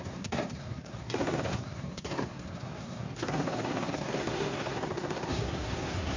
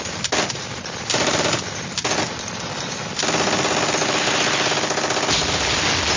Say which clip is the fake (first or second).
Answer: first